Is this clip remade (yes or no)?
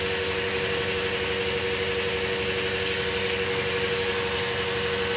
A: no